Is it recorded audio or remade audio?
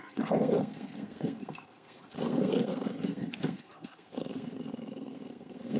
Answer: remade